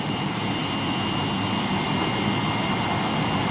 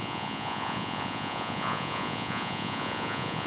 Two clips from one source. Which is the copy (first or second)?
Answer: second